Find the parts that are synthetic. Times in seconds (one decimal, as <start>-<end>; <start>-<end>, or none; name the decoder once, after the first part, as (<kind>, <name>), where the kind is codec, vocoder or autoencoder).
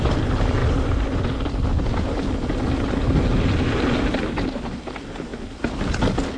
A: none